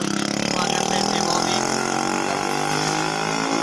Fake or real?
real